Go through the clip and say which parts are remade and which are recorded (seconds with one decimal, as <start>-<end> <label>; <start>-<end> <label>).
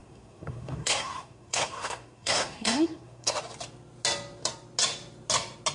0.0-3.4 remade; 3.4-5.7 recorded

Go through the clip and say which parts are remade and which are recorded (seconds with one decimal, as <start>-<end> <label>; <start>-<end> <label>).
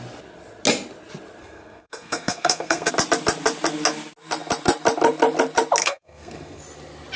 0.0-1.4 recorded; 1.4-2.9 remade; 2.9-5.8 recorded; 5.8-6.6 remade; 6.6-7.2 recorded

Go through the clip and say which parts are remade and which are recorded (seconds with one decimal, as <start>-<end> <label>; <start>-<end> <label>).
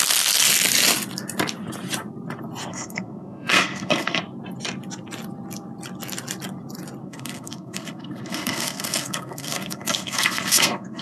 0.0-2.7 recorded; 2.7-4.2 remade; 4.2-7.0 recorded; 7.0-11.0 remade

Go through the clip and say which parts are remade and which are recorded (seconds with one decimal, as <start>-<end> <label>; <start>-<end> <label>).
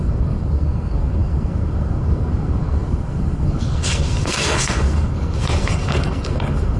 0.0-6.8 remade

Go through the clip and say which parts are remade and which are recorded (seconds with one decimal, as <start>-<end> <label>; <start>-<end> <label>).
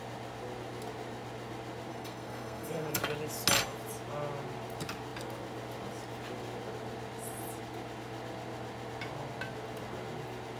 0.0-1.9 recorded; 1.9-3.0 remade; 3.0-10.6 recorded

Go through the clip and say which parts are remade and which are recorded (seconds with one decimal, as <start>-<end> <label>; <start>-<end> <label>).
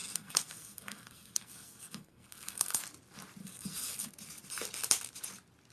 0.0-2.8 remade; 2.8-3.4 recorded; 3.4-4.1 remade; 4.1-5.7 recorded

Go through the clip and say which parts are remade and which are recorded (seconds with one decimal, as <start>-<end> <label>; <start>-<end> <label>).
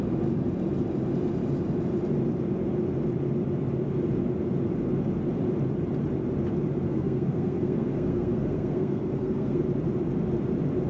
0.0-6.9 recorded; 6.9-9.6 remade; 9.6-10.9 recorded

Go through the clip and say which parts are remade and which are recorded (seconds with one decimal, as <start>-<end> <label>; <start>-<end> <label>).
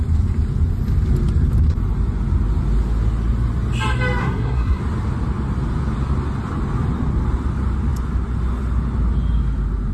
0.0-4.2 recorded; 4.2-4.8 remade; 4.8-9.9 recorded